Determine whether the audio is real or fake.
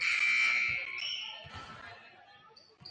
real